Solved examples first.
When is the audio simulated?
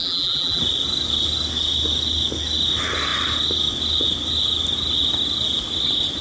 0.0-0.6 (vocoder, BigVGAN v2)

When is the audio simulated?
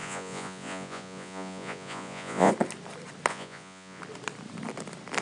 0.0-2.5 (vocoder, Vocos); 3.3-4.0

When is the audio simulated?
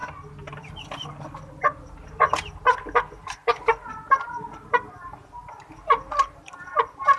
none